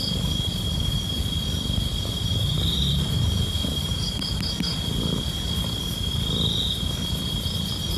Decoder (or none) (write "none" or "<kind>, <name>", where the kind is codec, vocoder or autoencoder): none